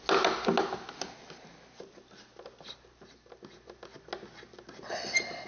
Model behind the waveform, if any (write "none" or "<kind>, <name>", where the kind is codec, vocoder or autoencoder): none